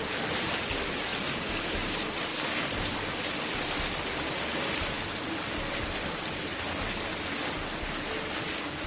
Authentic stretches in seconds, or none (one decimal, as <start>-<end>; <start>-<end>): 0.0-1.1; 1.9-2.3; 6.6-8.9